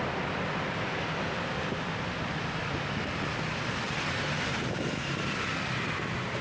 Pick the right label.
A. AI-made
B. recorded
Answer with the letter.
B